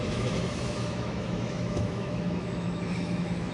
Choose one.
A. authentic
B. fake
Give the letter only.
B